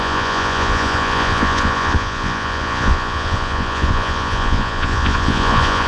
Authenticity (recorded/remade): remade